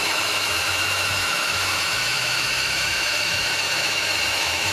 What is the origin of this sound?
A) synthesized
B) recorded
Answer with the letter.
A